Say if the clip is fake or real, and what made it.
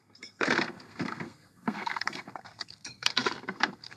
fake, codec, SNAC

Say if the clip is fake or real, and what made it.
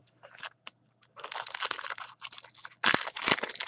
real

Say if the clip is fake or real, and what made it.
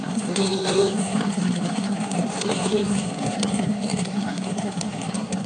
fake, codec, SNAC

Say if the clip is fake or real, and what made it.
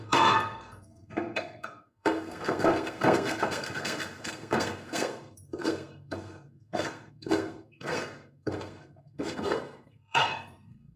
fake, codec, SNAC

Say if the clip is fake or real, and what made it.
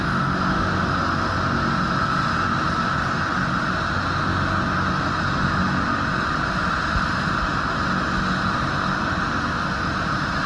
real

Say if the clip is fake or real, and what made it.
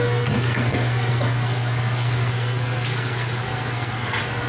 fake, codec, SNAC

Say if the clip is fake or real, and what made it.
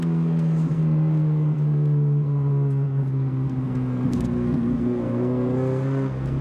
fake, codec, SNAC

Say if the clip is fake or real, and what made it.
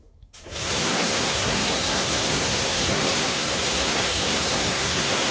fake, codec, SNAC